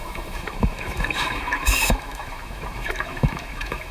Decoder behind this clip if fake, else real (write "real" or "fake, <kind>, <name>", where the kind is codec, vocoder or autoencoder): fake, autoencoder, DAC-VAE